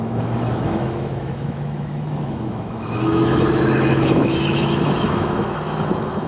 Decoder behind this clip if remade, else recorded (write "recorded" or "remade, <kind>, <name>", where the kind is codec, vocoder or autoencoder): remade, autoencoder, DAC-VAE